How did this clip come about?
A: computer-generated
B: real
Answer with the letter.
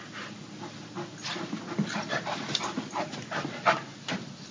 B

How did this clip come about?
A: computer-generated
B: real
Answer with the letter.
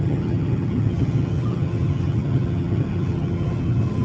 A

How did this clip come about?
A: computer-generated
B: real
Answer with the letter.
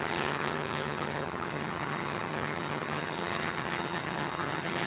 A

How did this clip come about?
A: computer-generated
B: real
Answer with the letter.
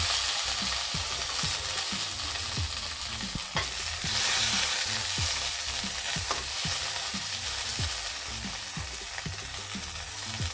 B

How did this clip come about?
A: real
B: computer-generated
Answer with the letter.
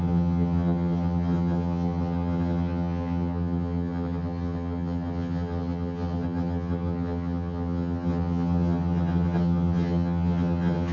B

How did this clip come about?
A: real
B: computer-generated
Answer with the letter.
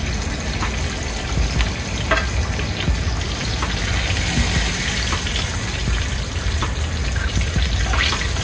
A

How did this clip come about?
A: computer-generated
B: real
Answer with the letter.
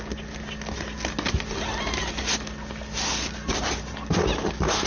B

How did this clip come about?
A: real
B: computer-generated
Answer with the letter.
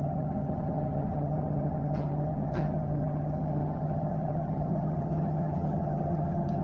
B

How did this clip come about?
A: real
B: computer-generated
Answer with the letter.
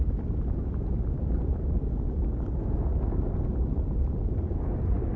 A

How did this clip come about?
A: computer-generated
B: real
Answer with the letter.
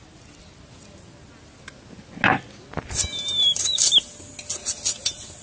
B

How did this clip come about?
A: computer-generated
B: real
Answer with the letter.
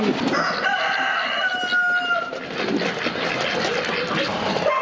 B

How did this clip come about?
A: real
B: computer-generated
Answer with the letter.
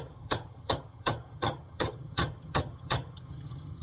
B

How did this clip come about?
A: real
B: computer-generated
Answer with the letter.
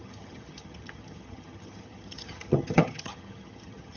B